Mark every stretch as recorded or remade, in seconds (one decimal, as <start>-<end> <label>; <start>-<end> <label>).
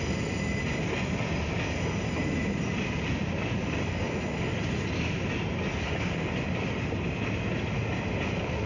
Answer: 0.0-2.2 recorded; 2.2-3.0 remade; 3.0-8.7 recorded